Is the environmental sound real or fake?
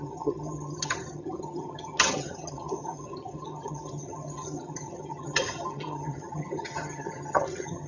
fake